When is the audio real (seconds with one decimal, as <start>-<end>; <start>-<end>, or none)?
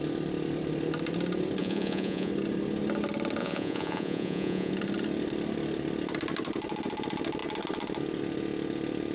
0.0-1.6; 2.3-3.4; 4.7-9.1